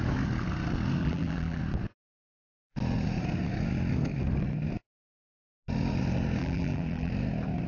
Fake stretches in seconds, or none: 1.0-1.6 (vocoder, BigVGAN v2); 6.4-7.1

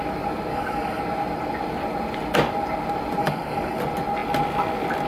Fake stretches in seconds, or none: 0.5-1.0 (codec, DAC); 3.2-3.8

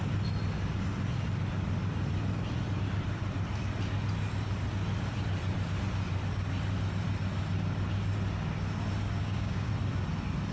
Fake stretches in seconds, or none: 9.2-9.7 (codec, DAC)

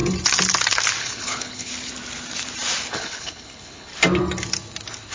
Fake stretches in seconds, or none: 1.0-1.7 (codec, HILCodec); 2.9-3.9

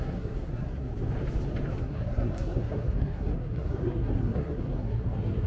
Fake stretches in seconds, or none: 0.0-0.9 (codec, SNAC); 1.8-5.5

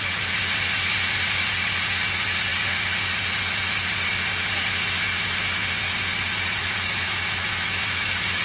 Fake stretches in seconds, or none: 6.6-8.4 (autoencoder, DAC-VAE)

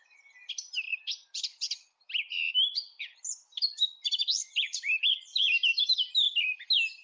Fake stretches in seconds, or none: 0.9-1.6 (vocoder, BigVGAN v2); 5.3-5.8

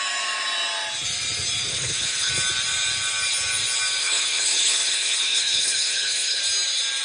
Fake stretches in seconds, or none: 1.7-2.3 (codec, HILCodec); 4.0-6.4